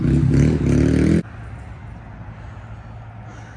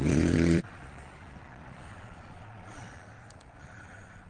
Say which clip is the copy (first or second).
second